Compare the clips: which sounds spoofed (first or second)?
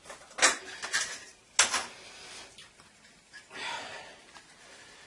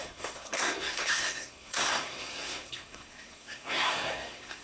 second